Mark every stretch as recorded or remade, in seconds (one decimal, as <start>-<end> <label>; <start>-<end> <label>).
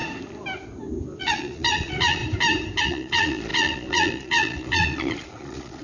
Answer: 0.0-1.2 recorded; 1.2-2.2 remade; 2.2-2.8 recorded; 2.8-5.8 remade